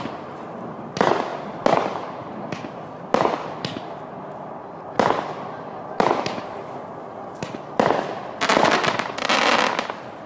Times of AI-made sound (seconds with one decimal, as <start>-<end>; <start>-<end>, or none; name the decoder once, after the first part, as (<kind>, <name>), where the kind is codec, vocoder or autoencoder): none